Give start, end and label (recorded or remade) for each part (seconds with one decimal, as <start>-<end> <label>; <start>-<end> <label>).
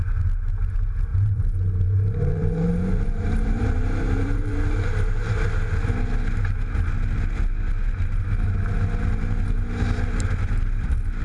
0.0-1.1 recorded; 1.1-5.3 remade; 5.3-11.2 recorded